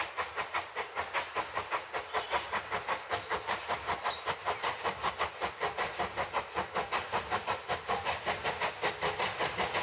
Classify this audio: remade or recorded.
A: recorded